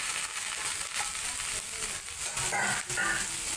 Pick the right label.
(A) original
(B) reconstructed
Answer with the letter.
A